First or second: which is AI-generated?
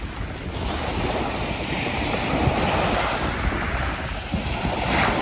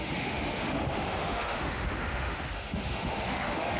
second